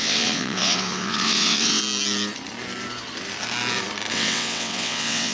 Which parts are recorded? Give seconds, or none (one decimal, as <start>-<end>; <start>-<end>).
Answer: 1.8-4.1